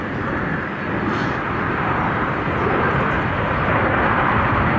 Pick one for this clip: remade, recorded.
recorded